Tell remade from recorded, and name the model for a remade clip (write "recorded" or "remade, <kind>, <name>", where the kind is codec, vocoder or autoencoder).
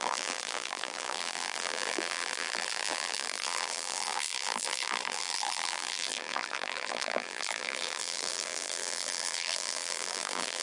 remade, vocoder, BigVGAN v2